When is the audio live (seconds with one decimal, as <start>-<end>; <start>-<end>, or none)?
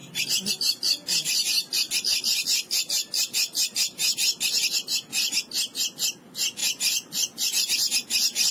0.0-8.5